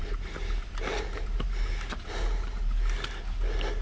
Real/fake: real